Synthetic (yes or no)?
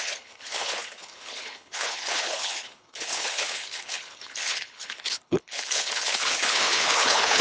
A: yes